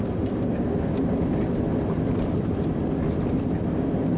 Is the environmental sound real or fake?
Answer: real